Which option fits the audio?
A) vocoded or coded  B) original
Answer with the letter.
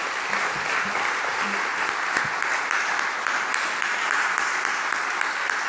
B